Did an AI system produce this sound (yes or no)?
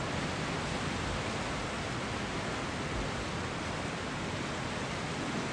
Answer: no